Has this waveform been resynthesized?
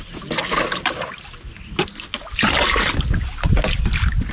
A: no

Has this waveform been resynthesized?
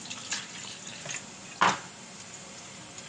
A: no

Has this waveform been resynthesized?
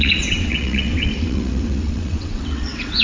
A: yes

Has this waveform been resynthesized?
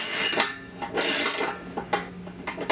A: no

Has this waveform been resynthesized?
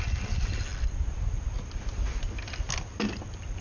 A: no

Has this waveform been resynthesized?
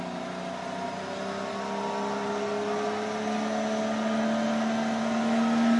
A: no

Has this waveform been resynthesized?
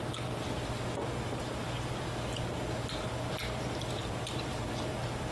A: no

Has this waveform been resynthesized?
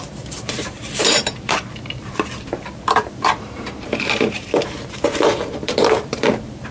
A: yes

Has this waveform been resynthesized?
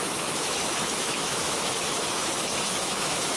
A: yes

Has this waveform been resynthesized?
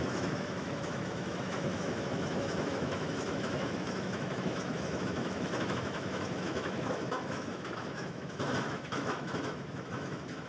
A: yes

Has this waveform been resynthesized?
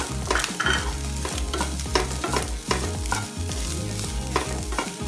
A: no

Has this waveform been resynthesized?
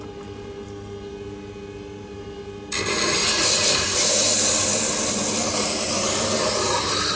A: no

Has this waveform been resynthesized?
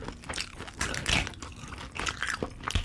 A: no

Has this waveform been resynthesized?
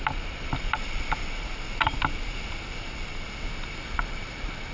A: no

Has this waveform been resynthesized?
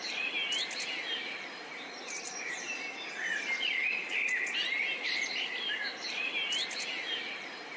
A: no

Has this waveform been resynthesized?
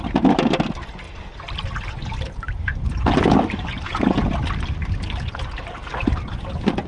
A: no